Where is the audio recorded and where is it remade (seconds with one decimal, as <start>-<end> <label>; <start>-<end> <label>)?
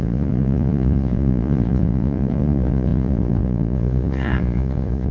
0.0-5.1 remade